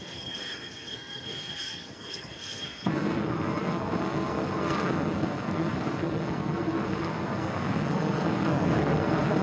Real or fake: fake